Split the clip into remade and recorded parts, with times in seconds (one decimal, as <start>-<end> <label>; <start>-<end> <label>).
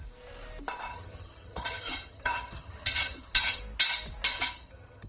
0.0-0.9 recorded; 0.9-3.6 remade; 3.6-4.3 recorded; 4.3-5.1 remade